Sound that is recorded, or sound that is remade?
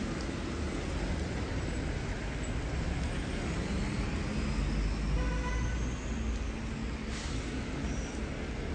recorded